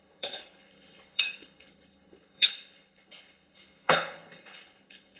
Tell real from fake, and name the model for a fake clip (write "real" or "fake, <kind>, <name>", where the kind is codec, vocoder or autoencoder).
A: fake, codec, HILCodec